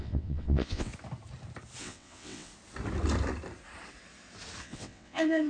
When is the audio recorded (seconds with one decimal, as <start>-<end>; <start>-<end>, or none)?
0.9-1.8; 2.5-4.6